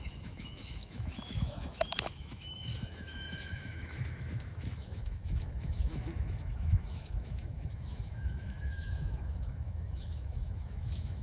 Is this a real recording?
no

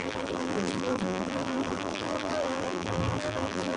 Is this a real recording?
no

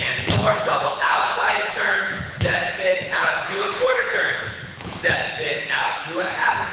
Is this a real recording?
no